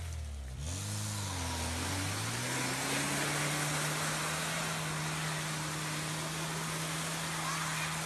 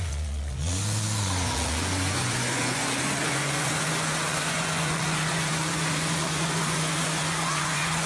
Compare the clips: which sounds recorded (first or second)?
first